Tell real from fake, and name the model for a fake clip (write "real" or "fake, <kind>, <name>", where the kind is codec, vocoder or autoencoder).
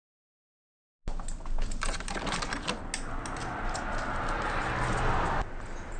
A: real